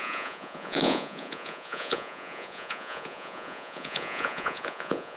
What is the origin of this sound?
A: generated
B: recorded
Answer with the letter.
A